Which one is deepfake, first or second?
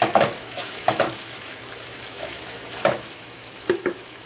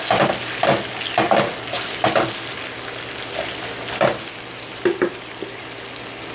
first